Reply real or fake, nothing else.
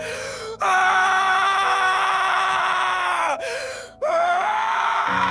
fake